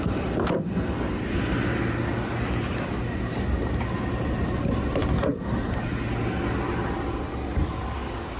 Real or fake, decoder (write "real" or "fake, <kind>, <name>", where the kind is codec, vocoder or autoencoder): real